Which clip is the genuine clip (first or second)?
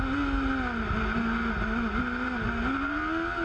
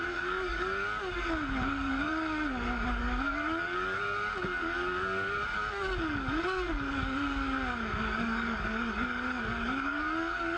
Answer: first